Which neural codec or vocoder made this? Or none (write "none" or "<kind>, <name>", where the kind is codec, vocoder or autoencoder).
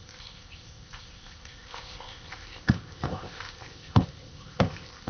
codec, ZipCodec